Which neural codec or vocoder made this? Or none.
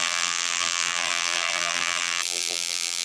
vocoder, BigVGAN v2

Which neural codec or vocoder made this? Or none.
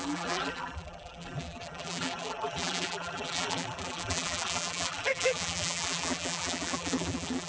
vocoder, BigVGAN v2